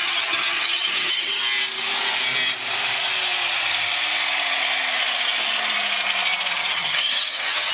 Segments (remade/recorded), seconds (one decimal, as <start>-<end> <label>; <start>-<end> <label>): 0.0-1.4 remade; 1.4-6.6 recorded; 6.6-7.7 remade